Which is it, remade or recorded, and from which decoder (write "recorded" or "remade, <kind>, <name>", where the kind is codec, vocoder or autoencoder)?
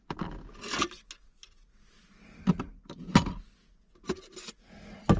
recorded